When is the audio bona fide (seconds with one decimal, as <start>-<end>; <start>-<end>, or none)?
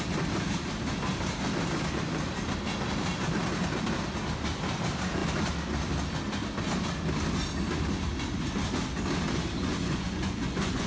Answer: 0.0-9.6